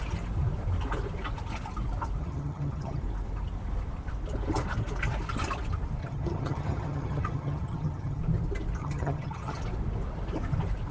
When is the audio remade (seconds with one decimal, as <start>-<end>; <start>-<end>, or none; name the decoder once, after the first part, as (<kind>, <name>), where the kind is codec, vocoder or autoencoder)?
2.2-3.0 (vocoder, HiFi-GAN); 6.0-8.2; 8.8-9.6